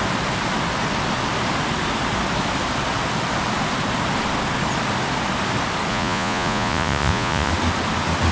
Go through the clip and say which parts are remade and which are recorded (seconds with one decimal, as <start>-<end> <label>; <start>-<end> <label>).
0.0-5.9 recorded; 5.9-7.5 remade; 7.5-8.3 recorded